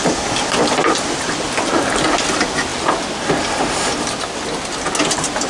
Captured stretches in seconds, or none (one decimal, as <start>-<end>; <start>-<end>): 0.0-5.5